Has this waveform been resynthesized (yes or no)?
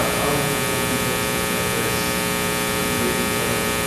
no